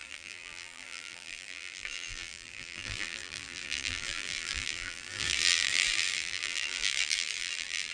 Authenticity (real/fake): fake